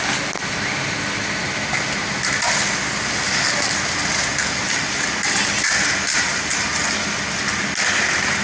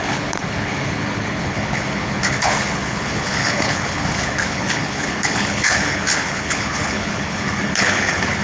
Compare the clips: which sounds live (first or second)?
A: first